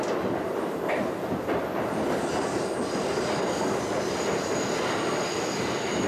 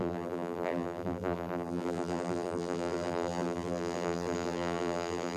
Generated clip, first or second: second